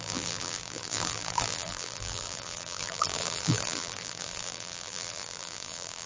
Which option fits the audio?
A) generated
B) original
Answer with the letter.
A